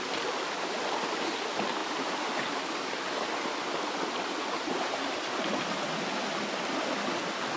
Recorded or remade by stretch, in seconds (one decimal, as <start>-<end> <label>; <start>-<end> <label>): 0.0-7.6 recorded